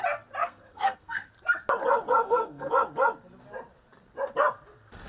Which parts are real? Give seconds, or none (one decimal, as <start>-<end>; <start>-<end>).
0.0-0.4; 1.3-2.2; 2.7-5.1